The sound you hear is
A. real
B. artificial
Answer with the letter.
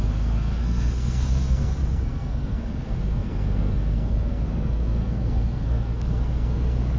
B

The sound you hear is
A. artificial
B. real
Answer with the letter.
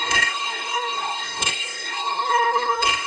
A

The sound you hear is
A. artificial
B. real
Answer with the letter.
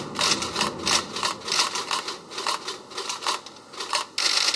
B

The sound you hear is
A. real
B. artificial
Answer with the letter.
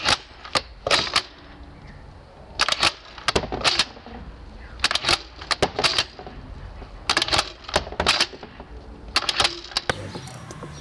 A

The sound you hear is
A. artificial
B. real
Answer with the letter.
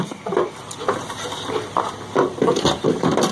B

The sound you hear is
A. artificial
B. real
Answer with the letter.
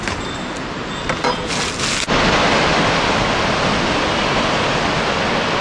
B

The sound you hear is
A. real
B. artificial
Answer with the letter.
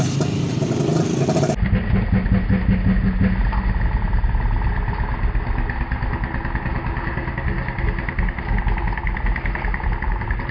A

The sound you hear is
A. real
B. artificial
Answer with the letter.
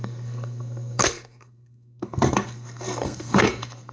B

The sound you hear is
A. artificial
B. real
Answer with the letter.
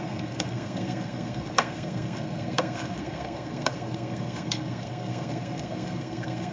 A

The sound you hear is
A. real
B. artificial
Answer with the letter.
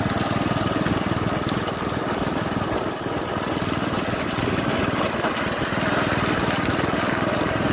A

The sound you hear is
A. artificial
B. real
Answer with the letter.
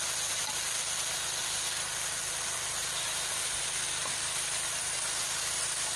B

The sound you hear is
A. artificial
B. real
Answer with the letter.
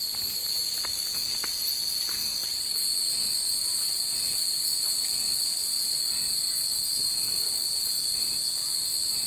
B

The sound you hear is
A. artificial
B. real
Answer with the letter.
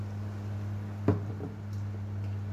B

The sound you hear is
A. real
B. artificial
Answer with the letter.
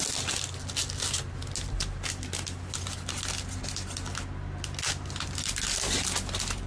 A